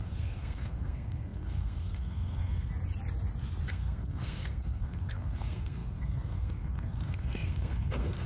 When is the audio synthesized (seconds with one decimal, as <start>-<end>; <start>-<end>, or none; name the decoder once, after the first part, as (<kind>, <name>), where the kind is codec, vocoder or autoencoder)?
0.0-2.7 (codec, SNAC); 3.7-8.3